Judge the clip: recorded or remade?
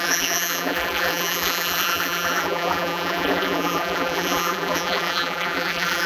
remade